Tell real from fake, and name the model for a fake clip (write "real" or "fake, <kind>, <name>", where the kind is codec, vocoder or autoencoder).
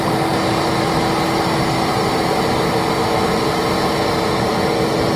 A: real